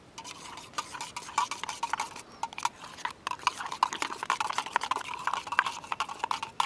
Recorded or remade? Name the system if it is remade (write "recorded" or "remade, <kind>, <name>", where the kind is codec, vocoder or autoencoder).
recorded